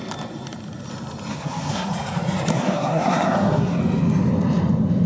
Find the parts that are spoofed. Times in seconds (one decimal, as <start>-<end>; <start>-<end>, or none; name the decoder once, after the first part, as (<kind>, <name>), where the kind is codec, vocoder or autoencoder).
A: 1.3-1.9 (codec, SNAC); 2.5-3.8